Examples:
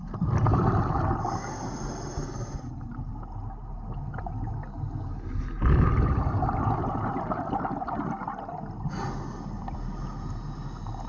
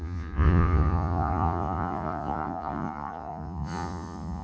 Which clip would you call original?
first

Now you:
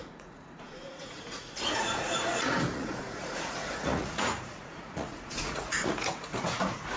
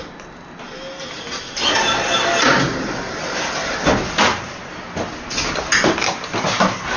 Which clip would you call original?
second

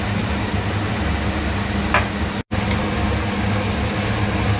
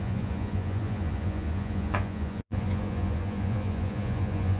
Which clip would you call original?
first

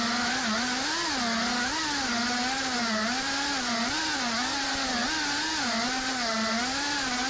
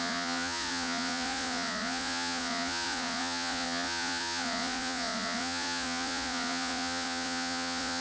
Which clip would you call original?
first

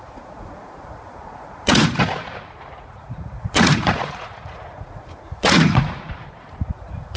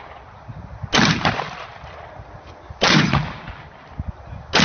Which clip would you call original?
second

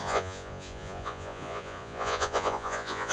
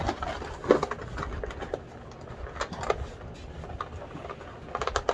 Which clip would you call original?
second